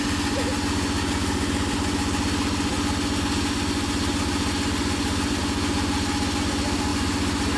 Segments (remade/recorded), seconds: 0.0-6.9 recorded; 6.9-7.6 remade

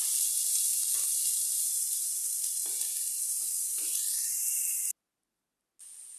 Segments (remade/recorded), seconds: 0.0-6.2 recorded

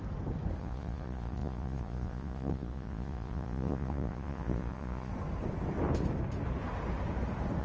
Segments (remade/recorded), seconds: 0.0-0.6 recorded; 0.6-5.1 remade; 5.1-7.6 recorded

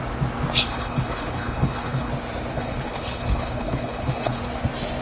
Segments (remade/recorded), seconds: 0.0-0.7 recorded; 0.7-2.1 remade; 2.1-2.5 recorded; 2.5-4.4 remade; 4.4-5.0 recorded